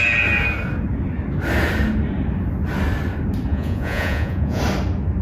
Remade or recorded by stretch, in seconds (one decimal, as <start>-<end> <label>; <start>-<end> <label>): 0.0-3.5 recorded; 3.5-4.6 remade; 4.6-5.2 recorded